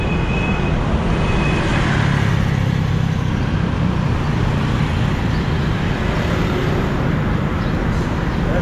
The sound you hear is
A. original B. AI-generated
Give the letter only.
A